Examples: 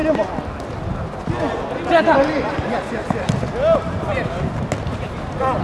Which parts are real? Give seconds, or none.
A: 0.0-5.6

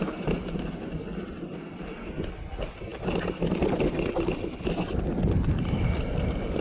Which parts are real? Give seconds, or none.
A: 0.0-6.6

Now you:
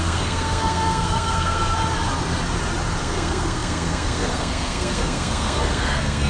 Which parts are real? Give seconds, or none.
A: 1.8-3.0

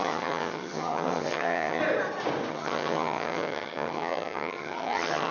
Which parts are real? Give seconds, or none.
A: 1.8-2.5